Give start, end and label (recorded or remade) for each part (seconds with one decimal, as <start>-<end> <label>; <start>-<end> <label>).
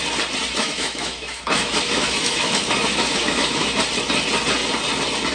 0.0-0.6 recorded; 0.6-3.8 remade; 3.8-5.3 recorded